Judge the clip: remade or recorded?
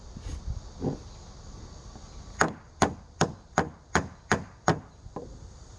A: recorded